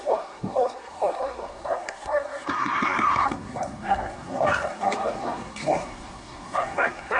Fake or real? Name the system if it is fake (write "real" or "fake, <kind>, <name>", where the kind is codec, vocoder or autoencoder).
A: fake, codec, SNAC